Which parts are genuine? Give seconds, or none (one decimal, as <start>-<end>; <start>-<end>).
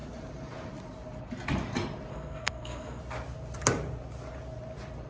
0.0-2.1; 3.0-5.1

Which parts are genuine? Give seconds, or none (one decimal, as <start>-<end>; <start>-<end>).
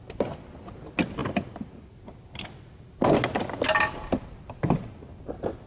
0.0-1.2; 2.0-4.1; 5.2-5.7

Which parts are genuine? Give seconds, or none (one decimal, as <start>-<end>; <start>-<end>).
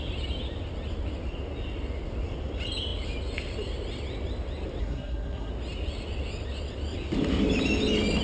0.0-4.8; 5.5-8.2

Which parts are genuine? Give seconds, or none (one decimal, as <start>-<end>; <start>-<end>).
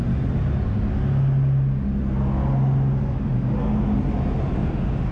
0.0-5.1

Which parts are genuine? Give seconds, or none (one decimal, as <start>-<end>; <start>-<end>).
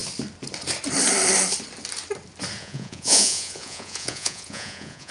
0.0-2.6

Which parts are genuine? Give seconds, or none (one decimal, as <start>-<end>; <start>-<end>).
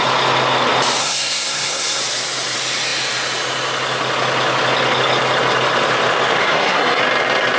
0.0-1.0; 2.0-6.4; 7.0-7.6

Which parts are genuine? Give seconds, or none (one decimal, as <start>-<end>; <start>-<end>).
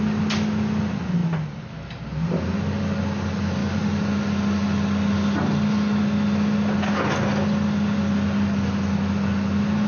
0.0-9.9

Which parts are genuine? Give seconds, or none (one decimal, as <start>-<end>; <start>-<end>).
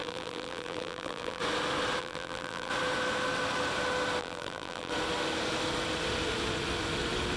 1.4-2.0; 2.7-4.2; 4.9-7.4